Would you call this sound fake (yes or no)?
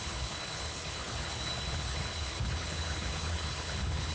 yes